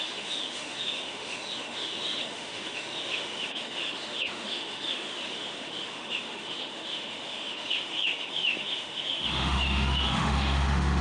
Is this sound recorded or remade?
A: remade